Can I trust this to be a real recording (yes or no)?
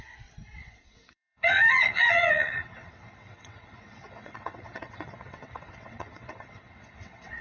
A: no